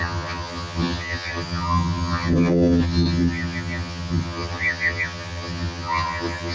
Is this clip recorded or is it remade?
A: remade